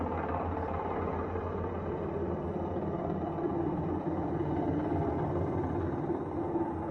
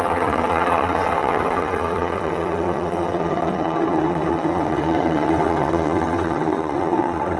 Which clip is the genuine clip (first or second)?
first